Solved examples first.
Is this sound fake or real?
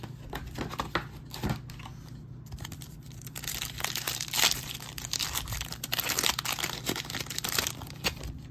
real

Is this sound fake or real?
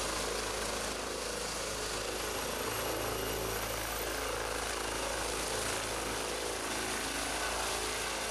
real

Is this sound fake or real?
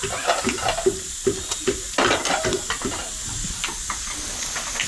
real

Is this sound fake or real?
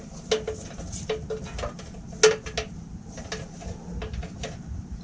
real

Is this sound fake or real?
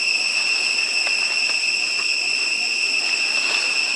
real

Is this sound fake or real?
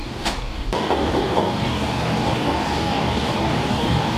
fake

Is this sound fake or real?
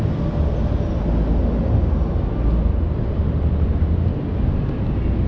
real